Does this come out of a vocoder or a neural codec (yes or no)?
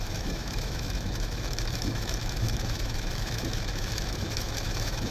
yes